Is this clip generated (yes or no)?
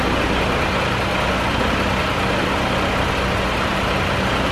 no